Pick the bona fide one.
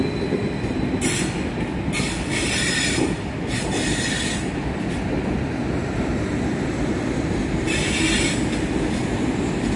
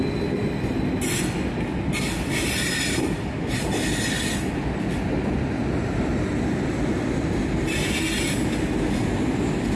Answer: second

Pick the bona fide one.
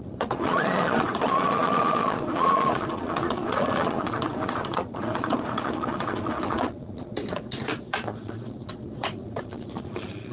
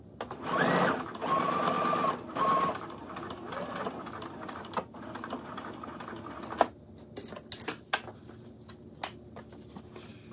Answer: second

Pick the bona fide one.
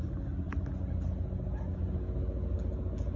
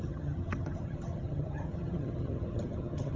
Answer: first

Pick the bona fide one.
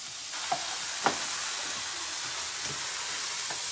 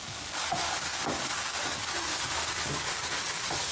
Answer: first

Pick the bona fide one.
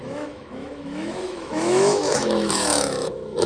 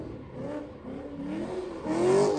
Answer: second